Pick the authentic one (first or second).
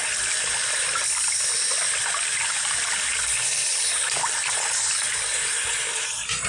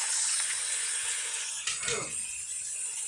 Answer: first